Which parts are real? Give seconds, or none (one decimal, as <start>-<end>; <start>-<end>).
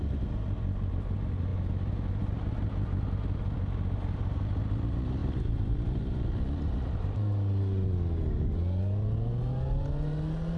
0.0-5.2; 6.9-10.6